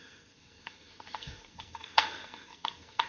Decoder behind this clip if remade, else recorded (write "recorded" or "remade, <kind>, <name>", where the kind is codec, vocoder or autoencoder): remade, codec, SNAC